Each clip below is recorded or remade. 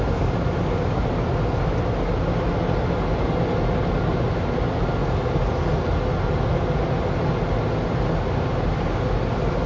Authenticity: recorded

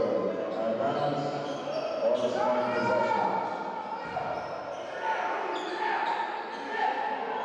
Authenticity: recorded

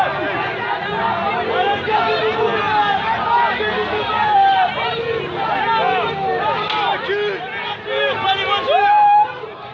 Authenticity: recorded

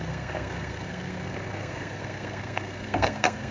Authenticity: remade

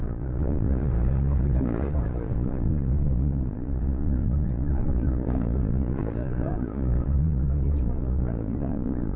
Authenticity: remade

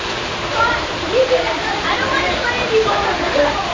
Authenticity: remade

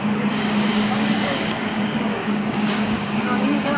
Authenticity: remade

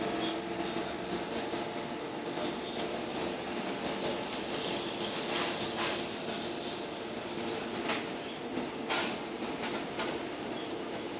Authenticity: recorded